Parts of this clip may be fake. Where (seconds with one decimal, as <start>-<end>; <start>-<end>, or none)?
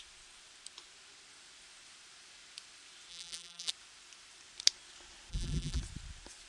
3.1-3.7; 5.3-5.8